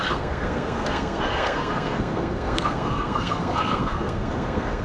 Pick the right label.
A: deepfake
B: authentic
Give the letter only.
A